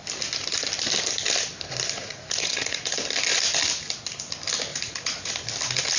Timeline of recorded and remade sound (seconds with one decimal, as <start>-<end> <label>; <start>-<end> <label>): 0.0-2.0 recorded; 2.0-2.9 remade; 2.9-4.7 recorded; 4.7-5.3 remade; 5.3-6.0 recorded